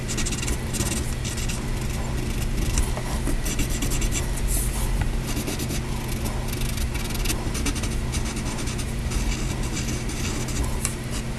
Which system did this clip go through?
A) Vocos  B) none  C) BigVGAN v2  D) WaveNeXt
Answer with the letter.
B